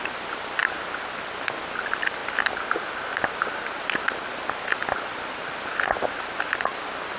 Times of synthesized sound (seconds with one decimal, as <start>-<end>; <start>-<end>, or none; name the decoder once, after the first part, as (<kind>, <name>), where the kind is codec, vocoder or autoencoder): none